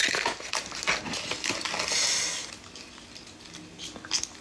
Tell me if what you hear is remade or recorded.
recorded